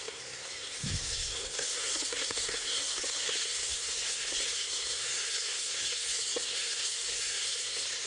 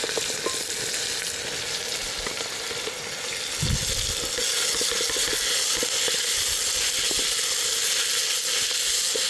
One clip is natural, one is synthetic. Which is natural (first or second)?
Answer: second